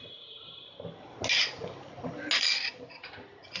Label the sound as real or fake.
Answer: real